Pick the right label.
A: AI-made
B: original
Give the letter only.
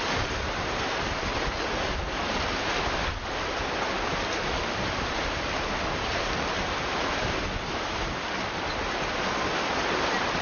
B